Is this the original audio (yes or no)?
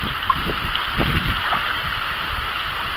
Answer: no